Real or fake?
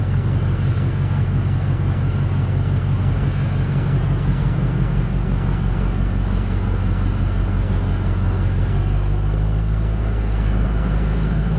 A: fake